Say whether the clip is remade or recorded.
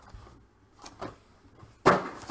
recorded